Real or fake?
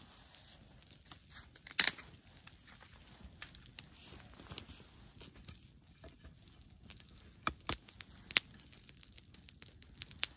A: real